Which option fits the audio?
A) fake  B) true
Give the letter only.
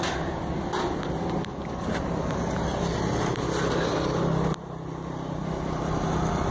B